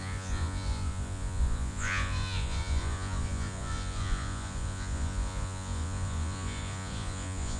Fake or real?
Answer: fake